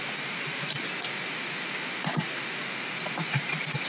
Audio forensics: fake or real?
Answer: real